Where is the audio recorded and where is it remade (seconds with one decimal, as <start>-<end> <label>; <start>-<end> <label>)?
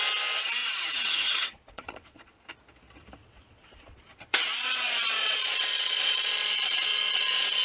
0.0-0.6 recorded; 0.6-2.5 remade; 2.5-3.2 recorded; 3.2-7.6 remade